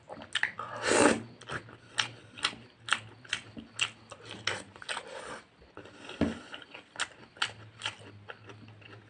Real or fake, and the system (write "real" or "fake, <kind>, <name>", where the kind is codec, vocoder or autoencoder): real